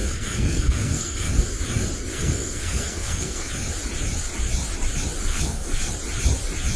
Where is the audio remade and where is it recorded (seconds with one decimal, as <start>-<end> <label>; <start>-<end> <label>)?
0.0-1.3 remade; 1.3-2.1 recorded; 2.1-3.5 remade; 3.5-5.3 recorded; 5.3-5.9 remade; 5.9-6.8 recorded